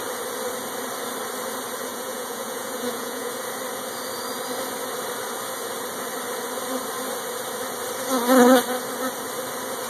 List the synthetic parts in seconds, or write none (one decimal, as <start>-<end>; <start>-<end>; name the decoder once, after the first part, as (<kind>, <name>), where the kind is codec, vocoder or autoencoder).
1.9-3.3 (vocoder, Vocos)